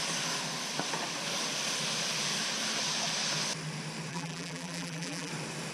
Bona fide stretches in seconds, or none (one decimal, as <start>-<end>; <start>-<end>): 0.0-4.1; 5.3-5.7